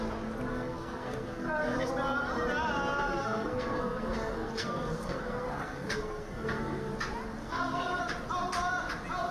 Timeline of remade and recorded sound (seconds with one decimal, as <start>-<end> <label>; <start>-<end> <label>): 0.0-0.5 recorded; 0.5-1.9 remade; 1.9-3.0 recorded; 3.0-6.9 remade; 6.9-7.4 recorded; 7.4-8.0 remade; 8.0-9.3 recorded